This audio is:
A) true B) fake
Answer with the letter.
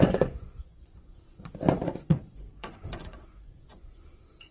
B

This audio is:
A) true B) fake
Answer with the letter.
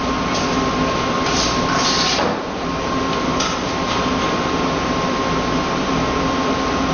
A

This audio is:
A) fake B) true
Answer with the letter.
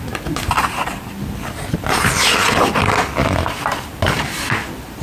B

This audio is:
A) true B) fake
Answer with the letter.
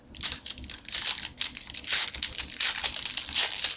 A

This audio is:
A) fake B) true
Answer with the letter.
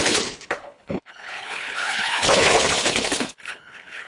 A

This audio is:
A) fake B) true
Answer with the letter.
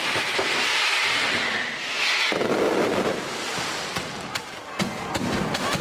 B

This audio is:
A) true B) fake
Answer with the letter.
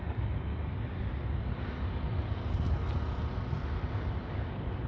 A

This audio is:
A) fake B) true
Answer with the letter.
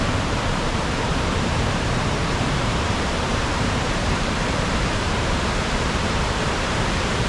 A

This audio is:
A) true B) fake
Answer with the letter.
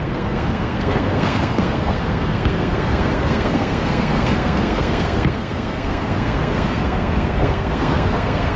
B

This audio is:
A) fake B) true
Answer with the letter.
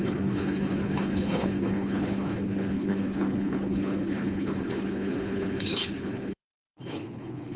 A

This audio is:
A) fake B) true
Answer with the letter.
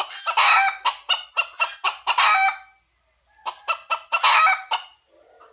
B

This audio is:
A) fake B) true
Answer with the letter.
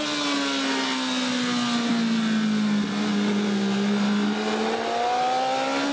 B